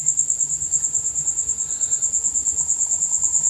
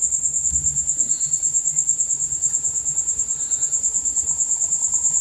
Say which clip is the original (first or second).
first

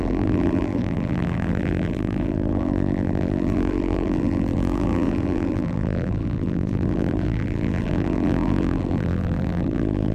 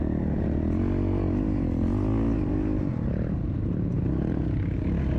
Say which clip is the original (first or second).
second